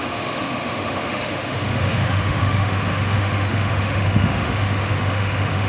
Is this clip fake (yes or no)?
yes